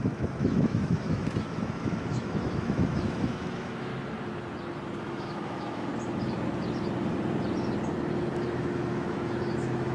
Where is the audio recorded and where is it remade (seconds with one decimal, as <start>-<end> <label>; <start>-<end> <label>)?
0.0-3.9 remade; 3.9-5.0 recorded; 5.0-5.9 remade; 5.9-8.3 recorded; 8.3-9.9 remade